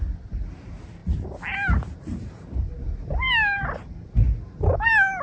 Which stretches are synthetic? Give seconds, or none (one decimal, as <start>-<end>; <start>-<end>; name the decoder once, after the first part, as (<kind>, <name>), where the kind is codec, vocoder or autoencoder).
none

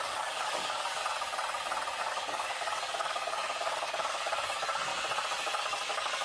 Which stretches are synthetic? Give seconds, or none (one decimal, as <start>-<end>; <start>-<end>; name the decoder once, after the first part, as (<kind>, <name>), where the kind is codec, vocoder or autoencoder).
0.0-1.0 (codec, DAC); 2.0-4.9; 5.6-6.2

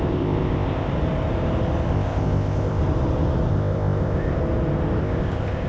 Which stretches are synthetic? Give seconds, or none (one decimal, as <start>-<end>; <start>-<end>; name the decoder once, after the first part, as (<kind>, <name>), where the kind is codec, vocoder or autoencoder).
0.0-0.9 (codec, ZipCodec); 1.9-2.8; 3.5-4.4; 5.0-5.7

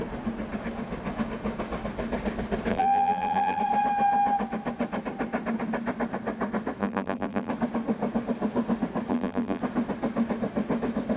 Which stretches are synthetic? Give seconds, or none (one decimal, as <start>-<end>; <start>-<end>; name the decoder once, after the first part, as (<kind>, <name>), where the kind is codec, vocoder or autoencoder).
2.7-3.6 (vocoder, BigVGAN v2); 6.8-7.5; 9.1-9.6